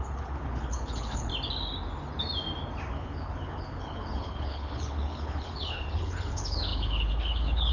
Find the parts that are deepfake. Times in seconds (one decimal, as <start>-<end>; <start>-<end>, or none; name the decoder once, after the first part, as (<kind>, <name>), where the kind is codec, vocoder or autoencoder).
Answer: 0.0-1.3 (codec, HILCodec); 2.9-7.7